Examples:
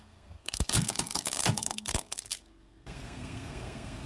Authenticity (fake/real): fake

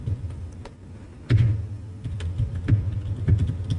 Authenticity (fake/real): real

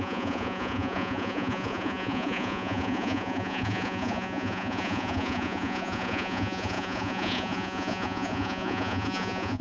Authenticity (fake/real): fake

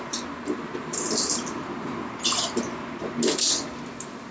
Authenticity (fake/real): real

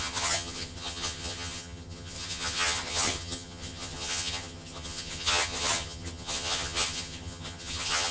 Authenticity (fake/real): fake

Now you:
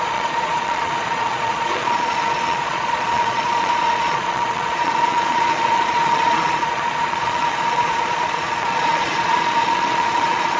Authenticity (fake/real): fake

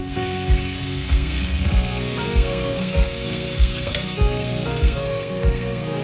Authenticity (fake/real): fake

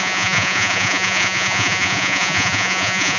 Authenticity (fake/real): fake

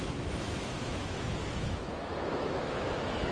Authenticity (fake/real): fake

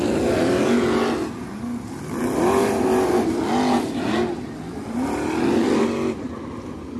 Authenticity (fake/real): real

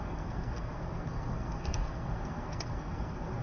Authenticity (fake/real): fake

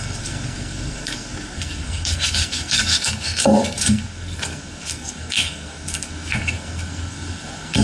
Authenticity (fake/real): fake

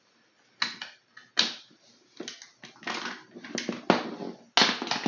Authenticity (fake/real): real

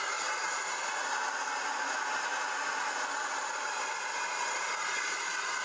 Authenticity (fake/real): real